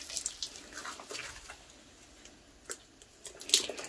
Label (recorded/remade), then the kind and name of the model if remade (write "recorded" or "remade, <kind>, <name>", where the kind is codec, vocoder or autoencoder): recorded